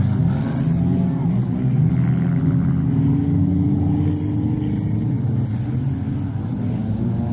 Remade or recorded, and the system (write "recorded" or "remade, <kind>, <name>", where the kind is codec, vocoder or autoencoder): recorded